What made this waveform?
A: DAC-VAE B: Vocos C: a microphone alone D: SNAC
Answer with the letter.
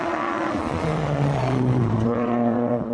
B